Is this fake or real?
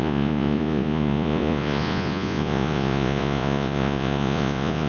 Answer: fake